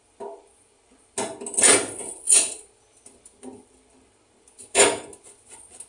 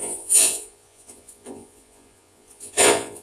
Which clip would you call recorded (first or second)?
first